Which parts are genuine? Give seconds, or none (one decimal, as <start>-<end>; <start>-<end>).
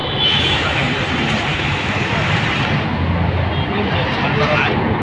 0.8-1.5; 2.1-5.0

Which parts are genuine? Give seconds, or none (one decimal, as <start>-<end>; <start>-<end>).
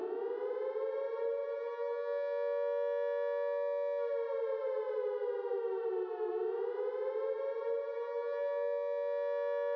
0.0-9.8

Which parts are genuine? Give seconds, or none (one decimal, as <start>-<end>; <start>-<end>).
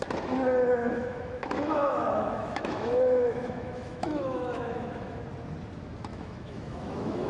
0.0-0.8; 5.2-6.1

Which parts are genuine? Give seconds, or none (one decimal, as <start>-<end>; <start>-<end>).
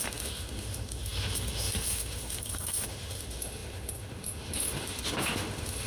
none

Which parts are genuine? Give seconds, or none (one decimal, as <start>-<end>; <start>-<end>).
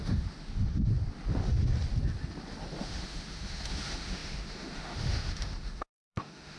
0.9-2.8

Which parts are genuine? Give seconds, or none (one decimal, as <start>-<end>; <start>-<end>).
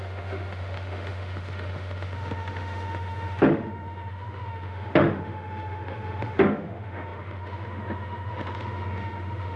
none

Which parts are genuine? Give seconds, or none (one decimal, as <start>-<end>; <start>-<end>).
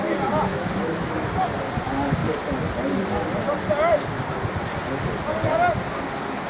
0.0-0.5; 1.1-6.5